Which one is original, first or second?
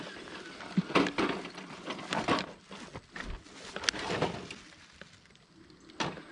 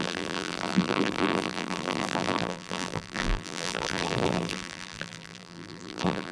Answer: first